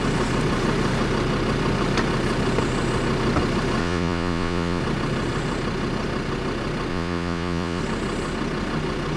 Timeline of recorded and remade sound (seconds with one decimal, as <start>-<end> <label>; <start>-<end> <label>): 0.0-3.8 recorded; 3.8-4.8 remade; 4.8-6.9 recorded; 6.9-7.8 remade; 7.8-9.2 recorded